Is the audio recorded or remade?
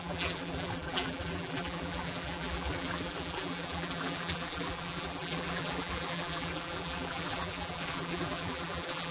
remade